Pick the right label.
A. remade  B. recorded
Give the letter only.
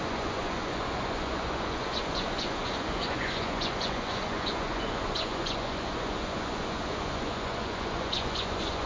A